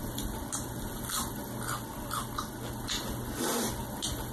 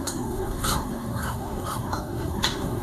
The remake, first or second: second